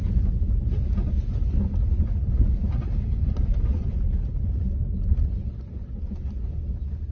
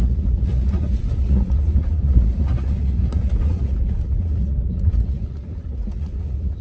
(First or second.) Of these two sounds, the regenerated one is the second